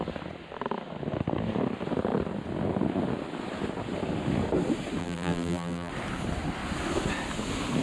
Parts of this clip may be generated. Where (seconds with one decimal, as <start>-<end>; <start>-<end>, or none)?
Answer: 5.0-5.9